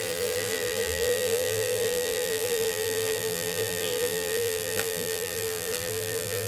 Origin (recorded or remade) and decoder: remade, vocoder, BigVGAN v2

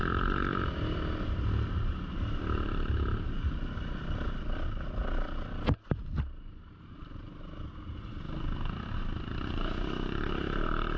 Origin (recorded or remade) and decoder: recorded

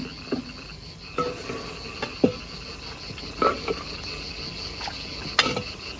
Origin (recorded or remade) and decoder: recorded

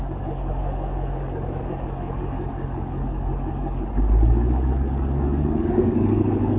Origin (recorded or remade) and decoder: remade, codec, DAC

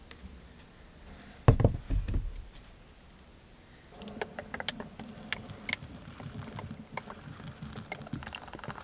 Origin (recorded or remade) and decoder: recorded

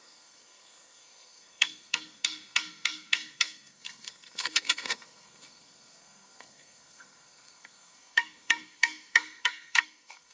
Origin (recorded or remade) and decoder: remade, codec, SNAC